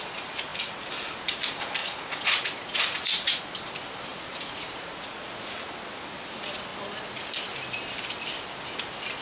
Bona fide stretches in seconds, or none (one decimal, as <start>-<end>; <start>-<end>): 0.0-1.8; 3.4-4.1; 5.7-9.2